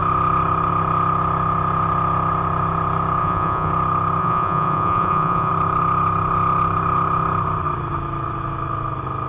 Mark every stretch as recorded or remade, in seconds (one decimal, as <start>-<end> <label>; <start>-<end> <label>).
0.0-3.2 recorded; 3.2-3.7 remade; 3.7-4.2 recorded; 4.2-5.5 remade; 5.5-9.3 recorded